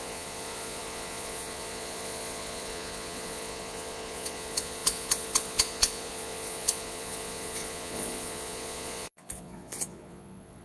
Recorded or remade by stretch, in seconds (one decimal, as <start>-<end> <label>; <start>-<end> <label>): 0.0-10.6 remade